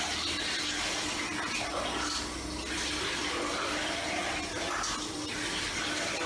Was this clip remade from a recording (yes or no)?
no